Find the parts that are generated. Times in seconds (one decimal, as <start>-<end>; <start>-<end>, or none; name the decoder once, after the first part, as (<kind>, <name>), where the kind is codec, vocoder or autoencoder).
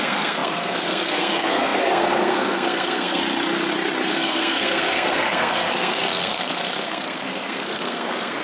0.0-3.2 (codec, SNAC); 4.1-8.4